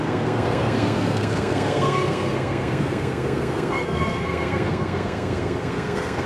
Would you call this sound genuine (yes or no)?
no